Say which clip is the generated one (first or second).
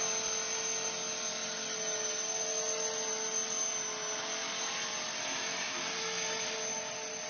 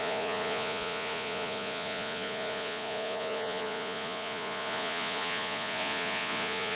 second